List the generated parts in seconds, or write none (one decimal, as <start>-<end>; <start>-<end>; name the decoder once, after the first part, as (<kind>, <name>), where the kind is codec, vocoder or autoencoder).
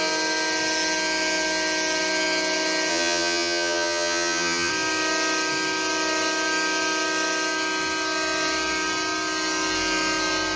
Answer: 2.9-4.7 (vocoder, HiFi-GAN)